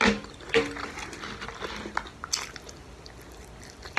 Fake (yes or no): no